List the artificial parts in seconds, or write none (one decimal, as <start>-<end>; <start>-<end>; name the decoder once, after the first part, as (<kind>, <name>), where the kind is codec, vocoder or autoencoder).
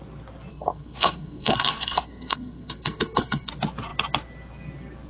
0.5-3.5 (codec, SNAC)